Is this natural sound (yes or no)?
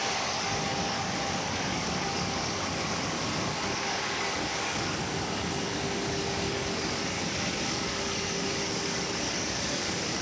no